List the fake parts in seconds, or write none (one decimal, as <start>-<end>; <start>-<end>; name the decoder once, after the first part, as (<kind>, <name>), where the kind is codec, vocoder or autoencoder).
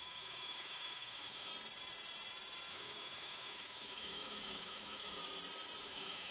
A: 0.0-1.5 (autoencoder, DAC-VAE); 2.7-5.2; 5.8-6.3